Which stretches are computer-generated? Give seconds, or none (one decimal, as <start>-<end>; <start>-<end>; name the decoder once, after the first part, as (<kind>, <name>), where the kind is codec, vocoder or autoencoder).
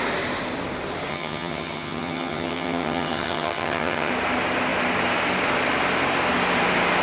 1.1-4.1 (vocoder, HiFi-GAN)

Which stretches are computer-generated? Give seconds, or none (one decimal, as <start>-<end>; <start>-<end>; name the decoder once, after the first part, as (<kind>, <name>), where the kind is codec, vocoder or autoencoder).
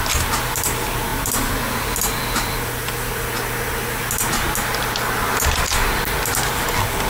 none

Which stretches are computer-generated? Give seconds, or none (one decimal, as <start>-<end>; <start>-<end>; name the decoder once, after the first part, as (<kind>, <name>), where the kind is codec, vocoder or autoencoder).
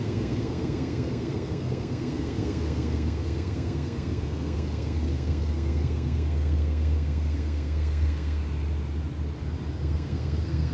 0.0-8.4 (codec, SNAC); 9.7-10.7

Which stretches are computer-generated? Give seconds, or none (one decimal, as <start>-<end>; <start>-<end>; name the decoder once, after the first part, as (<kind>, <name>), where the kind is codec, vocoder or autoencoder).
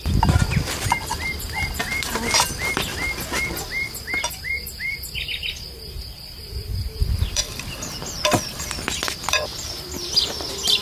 0.0-0.4 (vocoder, BigVGAN v2); 1.1-2.9; 7.1-10.8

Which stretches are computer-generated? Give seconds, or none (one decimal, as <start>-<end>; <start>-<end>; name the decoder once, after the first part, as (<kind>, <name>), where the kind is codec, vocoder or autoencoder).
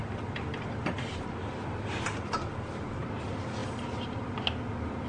0.0-3.0 (vocoder, BigVGAN v2); 3.6-4.4